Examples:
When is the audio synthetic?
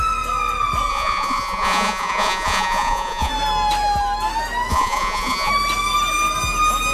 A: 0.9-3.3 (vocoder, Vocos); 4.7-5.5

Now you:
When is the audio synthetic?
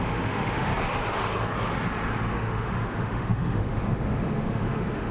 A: 0.0-0.7 (autoencoder, DAC-VAE); 2.3-5.1